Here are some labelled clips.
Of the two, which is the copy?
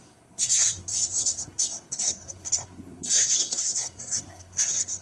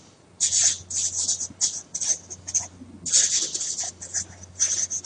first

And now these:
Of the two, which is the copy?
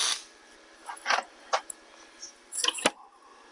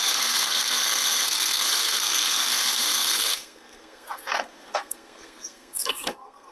second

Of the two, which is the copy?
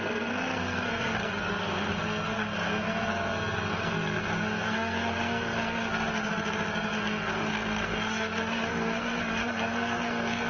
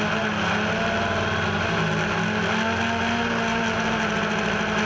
first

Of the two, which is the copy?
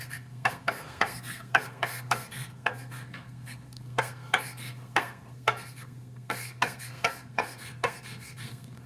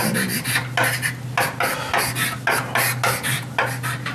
first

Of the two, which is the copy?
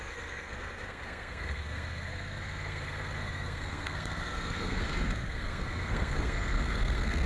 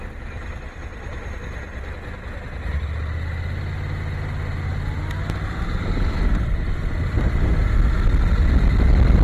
first